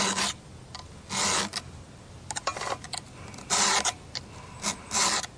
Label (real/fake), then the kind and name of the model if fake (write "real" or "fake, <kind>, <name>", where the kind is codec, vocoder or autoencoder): real